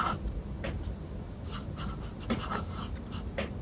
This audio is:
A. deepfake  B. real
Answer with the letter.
B